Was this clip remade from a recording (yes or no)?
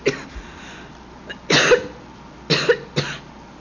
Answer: no